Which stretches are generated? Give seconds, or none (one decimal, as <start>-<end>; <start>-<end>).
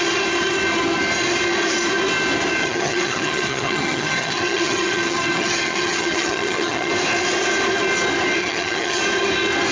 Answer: 2.6-6.9; 8.4-9.0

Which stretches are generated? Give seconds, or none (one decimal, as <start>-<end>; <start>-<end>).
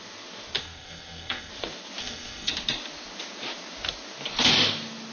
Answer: 0.6-1.5; 2.0-2.5